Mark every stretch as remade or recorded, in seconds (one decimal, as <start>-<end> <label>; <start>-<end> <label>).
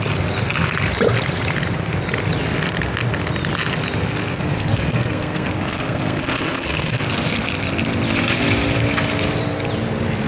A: 0.0-4.2 recorded; 4.2-7.0 remade; 7.0-10.3 recorded